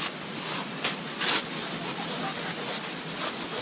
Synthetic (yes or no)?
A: no